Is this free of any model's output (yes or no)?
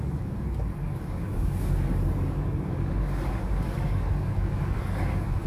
no